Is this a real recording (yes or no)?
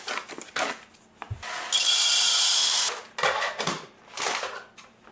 yes